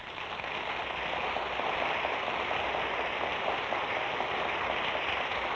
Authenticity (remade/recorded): recorded